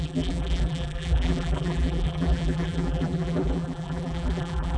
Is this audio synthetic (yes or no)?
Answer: yes